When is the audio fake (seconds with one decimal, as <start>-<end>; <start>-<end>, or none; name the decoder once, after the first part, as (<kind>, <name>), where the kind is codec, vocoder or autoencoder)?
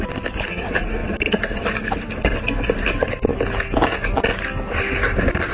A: 0.0-3.3 (vocoder, BigVGAN v2); 5.0-5.5